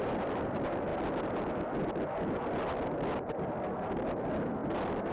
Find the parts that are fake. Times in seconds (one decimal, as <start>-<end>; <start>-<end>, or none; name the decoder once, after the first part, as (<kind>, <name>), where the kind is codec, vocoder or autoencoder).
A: none